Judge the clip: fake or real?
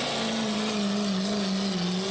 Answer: real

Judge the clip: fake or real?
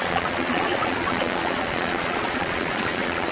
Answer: fake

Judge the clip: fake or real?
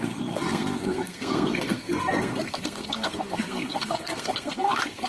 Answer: fake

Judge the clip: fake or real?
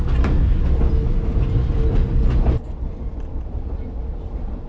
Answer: real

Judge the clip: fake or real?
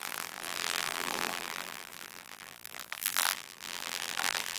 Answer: fake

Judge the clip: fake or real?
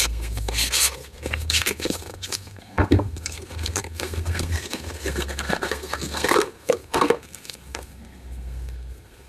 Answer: fake